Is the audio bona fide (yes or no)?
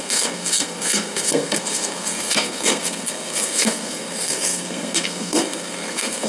no